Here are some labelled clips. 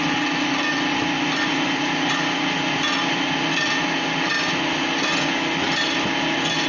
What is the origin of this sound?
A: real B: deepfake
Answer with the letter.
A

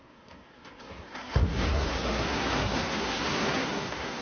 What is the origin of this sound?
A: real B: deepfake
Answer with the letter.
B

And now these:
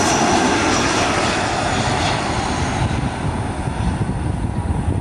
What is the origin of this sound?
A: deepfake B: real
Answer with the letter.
B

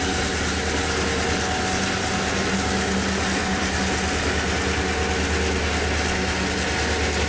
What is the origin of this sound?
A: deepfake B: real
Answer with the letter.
B